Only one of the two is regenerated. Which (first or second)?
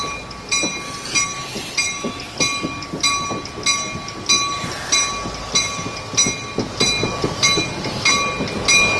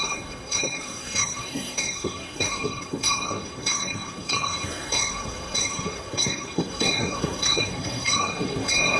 second